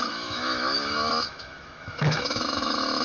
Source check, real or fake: fake